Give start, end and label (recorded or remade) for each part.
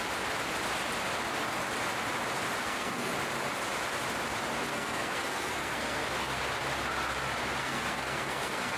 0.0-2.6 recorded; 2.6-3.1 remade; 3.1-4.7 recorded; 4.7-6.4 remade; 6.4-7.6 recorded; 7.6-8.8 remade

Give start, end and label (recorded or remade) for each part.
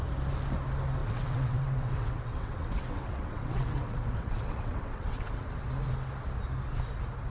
0.0-1.0 recorded; 1.0-5.4 remade; 5.4-7.3 recorded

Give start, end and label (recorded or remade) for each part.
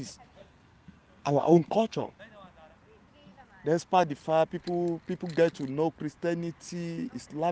0.0-0.4 recorded; 0.4-2.2 remade; 2.2-7.5 recorded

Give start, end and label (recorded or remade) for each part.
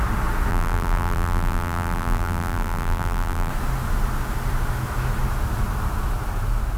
0.0-0.5 recorded; 0.5-3.5 remade; 3.5-6.8 recorded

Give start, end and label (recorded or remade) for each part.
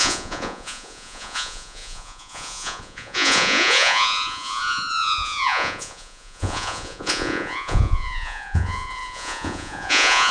0.0-10.3 remade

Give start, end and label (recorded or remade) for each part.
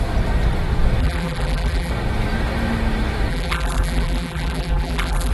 0.0-1.0 recorded; 1.0-1.9 remade; 1.9-3.3 recorded; 3.3-5.3 remade